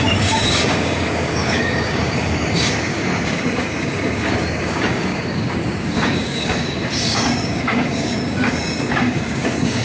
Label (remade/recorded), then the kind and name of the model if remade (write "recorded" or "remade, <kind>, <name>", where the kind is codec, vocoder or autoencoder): remade, codec, DAC